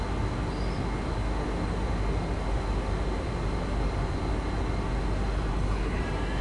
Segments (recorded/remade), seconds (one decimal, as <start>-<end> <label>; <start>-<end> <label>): 0.0-5.5 recorded; 5.5-6.0 remade; 6.0-6.4 recorded